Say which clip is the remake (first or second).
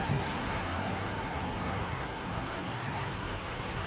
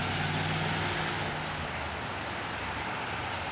first